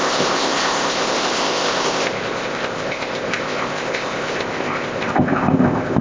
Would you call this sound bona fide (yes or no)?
no